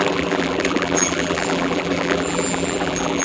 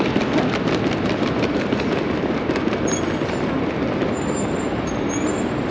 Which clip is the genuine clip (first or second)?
second